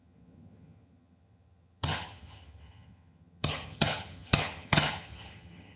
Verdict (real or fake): fake